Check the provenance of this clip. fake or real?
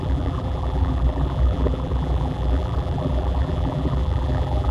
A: fake